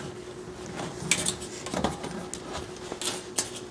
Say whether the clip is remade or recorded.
recorded